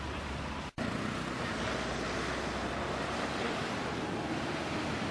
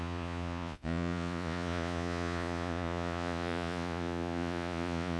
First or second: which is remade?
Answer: second